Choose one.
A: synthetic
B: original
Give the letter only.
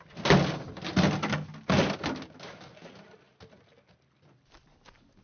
B